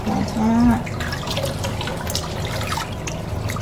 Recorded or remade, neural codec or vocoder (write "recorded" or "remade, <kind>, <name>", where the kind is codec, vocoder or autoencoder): recorded